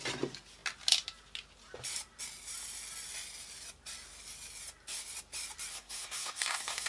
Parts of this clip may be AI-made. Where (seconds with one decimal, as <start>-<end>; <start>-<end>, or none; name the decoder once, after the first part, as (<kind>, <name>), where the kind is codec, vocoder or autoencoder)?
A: 5.7-6.9 (codec, SNAC)